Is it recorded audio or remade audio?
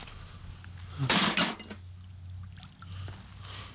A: recorded